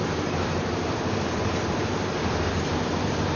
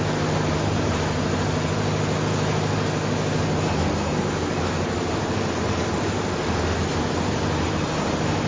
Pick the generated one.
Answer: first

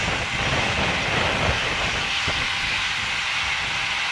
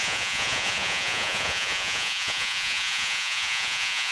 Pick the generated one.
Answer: second